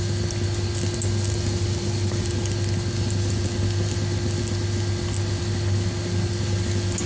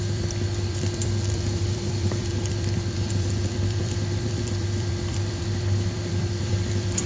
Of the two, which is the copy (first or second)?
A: second